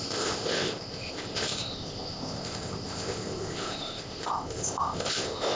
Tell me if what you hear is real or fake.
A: fake